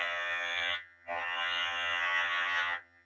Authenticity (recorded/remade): remade